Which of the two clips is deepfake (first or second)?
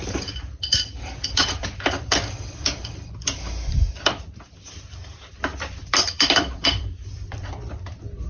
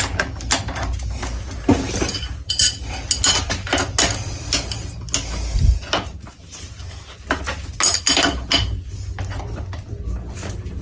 first